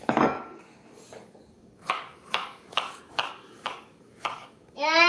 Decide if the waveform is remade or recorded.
remade